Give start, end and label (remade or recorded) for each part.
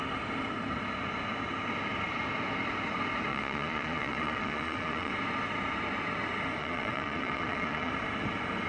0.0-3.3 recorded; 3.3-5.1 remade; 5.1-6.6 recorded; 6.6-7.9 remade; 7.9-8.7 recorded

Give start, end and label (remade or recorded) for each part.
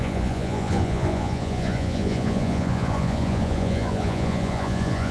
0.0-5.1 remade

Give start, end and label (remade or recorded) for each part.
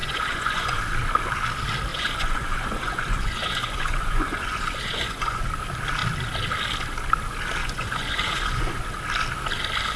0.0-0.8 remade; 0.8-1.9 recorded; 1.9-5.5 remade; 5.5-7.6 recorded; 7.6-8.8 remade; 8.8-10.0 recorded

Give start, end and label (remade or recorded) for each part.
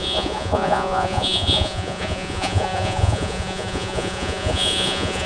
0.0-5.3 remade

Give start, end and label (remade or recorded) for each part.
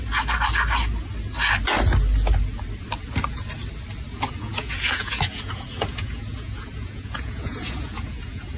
0.0-4.1 recorded; 4.1-8.6 remade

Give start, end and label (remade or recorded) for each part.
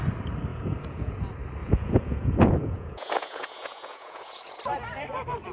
0.0-0.5 recorded; 0.5-1.1 remade; 1.1-1.6 recorded; 1.6-4.6 remade; 4.6-5.5 recorded